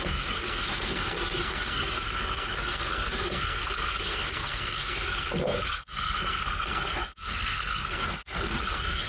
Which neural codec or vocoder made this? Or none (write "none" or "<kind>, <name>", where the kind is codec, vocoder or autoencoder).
codec, SNAC